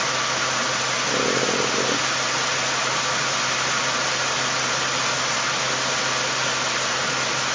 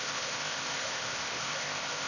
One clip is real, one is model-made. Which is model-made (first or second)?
second